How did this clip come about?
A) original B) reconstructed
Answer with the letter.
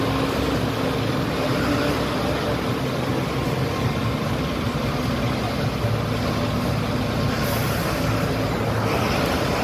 A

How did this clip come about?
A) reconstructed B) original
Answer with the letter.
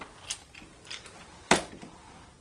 B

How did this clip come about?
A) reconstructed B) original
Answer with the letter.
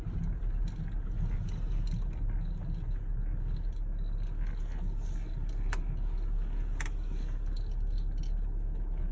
B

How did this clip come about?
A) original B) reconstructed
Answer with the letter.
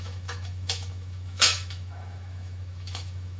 B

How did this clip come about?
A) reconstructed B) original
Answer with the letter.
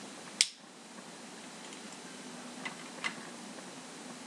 B